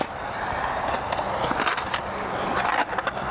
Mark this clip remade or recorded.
recorded